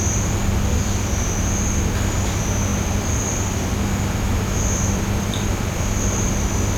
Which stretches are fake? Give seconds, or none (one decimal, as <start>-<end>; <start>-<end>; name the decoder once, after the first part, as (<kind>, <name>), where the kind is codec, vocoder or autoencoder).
0.4-1.1 (vocoder, BigVGAN v2); 2.7-6.3